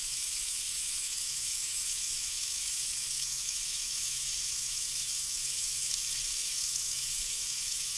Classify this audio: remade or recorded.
remade